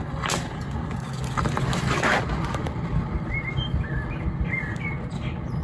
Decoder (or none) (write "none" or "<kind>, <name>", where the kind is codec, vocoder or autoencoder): none